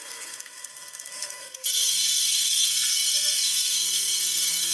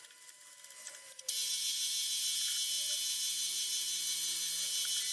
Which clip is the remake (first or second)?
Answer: first